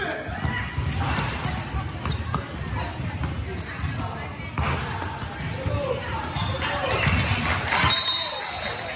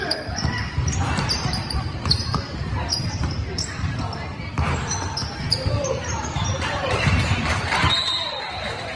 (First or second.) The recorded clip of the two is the first